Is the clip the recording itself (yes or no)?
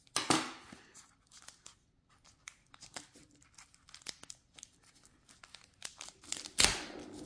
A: yes